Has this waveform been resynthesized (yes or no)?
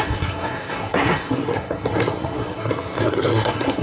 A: yes